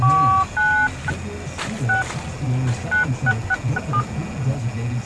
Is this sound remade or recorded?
recorded